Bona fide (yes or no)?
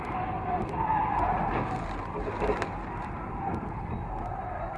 yes